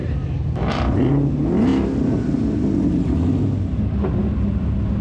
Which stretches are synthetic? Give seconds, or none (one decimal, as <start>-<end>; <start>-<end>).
0.0-1.1